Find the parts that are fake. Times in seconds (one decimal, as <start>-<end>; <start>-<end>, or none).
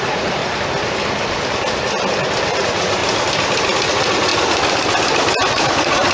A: 0.0-0.4; 2.6-3.0; 3.9-4.3; 5.5-6.1